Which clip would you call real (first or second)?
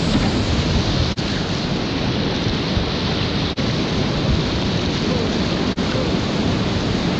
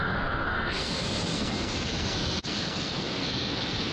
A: first